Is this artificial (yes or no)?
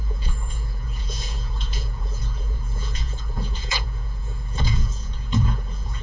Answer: yes